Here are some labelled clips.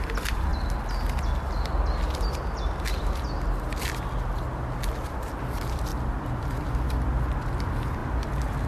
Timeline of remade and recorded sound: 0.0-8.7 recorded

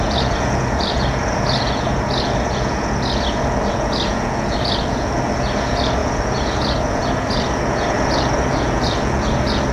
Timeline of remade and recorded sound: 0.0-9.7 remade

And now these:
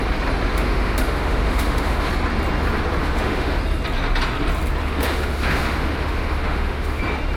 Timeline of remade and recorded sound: 0.0-0.5 recorded; 0.5-2.1 remade; 2.1-3.0 recorded; 3.0-3.6 remade; 3.6-4.8 recorded; 4.8-7.0 remade; 7.0-7.4 recorded

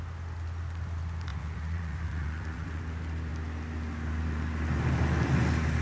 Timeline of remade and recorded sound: 0.0-1.3 recorded; 1.3-2.8 remade; 2.8-5.8 recorded